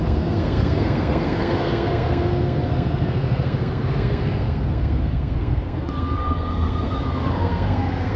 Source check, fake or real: fake